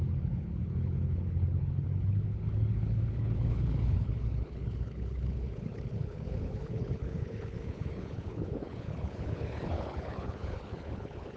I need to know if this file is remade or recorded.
remade